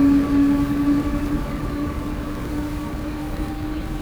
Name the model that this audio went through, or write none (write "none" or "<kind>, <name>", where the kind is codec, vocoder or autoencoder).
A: codec, DAC